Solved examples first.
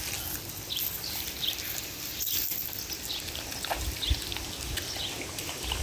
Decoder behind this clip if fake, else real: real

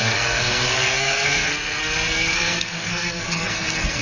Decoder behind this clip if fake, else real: fake, codec, SNAC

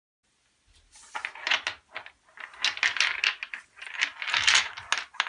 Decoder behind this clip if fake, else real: real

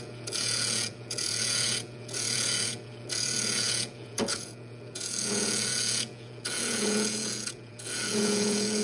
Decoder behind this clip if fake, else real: fake, vocoder, Vocos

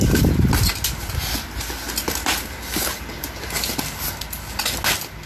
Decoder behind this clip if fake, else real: real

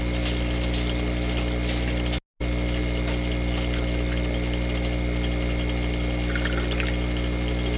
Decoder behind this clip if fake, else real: real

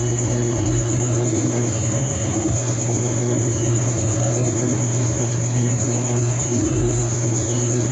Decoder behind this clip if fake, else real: fake, codec, SNAC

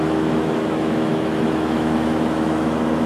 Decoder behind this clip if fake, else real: fake, autoencoder, DAC-VAE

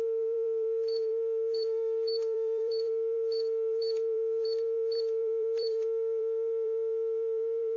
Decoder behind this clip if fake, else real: fake, vocoder, BigVGAN v2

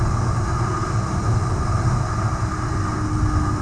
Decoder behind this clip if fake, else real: real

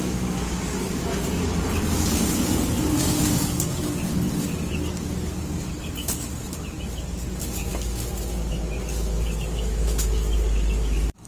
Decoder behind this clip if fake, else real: fake, codec, DAC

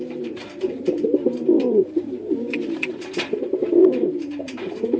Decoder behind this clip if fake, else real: fake, vocoder, BigVGAN v2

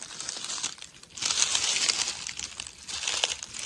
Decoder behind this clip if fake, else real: real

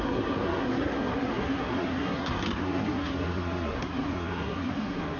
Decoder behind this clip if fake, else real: fake, codec, SNAC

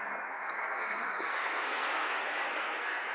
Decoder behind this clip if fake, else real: fake, codec, SNAC